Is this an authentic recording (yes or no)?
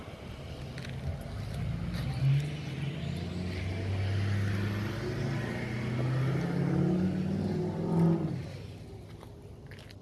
yes